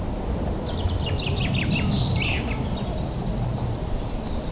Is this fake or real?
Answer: fake